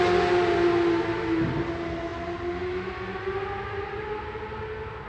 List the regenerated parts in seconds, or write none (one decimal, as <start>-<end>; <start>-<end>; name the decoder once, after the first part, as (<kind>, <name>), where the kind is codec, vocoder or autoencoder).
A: none